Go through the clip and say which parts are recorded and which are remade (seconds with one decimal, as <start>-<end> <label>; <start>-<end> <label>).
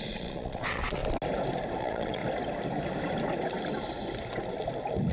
0.0-1.0 remade; 1.0-1.8 recorded; 1.8-2.2 remade; 2.2-5.1 recorded